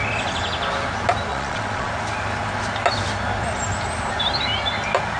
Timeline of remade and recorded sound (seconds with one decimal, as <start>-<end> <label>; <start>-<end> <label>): 0.0-1.3 recorded; 1.3-1.9 remade; 1.9-5.2 recorded